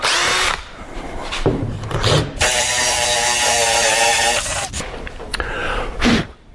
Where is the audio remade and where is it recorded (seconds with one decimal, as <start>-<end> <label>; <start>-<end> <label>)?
0.0-6.5 remade